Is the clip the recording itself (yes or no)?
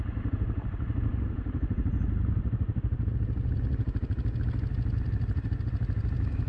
yes